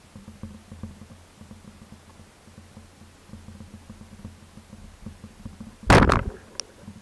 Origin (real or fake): real